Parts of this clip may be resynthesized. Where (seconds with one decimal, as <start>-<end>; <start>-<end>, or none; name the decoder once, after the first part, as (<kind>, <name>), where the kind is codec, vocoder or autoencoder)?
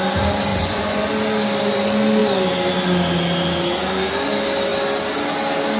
0.5-1.1 (vocoder, Vocos)